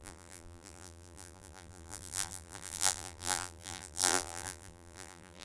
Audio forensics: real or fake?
fake